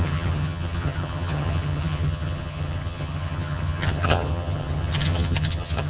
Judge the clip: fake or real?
fake